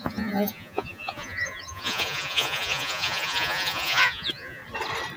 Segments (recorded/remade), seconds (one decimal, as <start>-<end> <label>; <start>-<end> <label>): 0.0-4.6 remade; 4.6-5.2 recorded